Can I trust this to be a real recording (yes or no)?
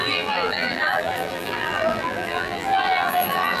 no